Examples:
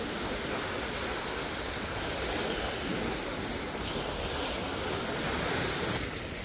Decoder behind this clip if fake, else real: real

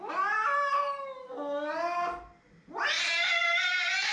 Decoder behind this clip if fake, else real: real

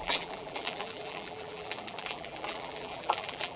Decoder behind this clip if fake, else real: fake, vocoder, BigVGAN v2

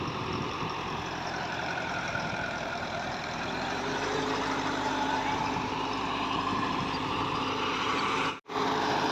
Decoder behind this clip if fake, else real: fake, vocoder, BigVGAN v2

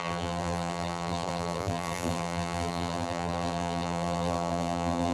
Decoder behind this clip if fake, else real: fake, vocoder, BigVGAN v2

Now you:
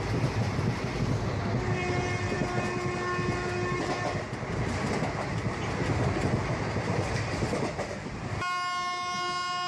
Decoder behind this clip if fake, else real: real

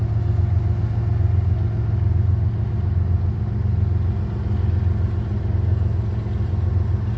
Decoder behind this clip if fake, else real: real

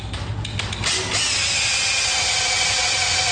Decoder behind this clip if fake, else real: real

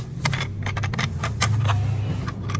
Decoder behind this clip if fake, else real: real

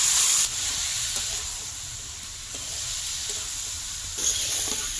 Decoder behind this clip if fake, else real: fake, vocoder, BigVGAN v2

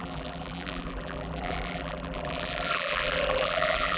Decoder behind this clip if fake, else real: fake, vocoder, BigVGAN v2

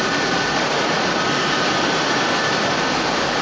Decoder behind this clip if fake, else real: real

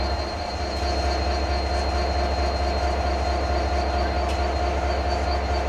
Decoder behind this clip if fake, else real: real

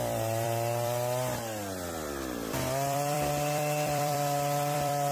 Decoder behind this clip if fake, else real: fake, vocoder, BigVGAN v2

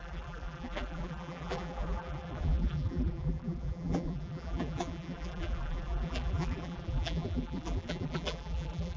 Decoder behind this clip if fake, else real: fake, vocoder, BigVGAN v2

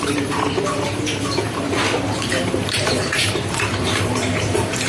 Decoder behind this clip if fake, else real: fake, vocoder, BigVGAN v2